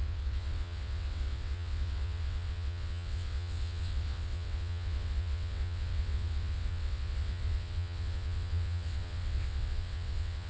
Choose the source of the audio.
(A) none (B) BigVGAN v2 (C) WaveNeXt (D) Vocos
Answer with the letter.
C